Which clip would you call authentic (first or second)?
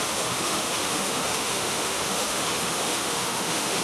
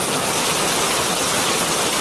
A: second